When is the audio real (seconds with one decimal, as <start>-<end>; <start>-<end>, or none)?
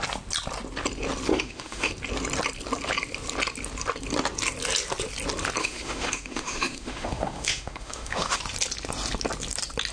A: 0.0-1.3; 1.9-5.6; 8.4-9.9